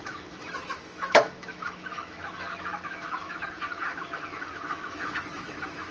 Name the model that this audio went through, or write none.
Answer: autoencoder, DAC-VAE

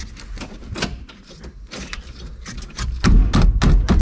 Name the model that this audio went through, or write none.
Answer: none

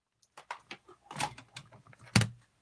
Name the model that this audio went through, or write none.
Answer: none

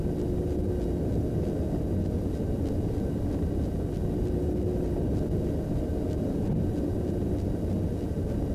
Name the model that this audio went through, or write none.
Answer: none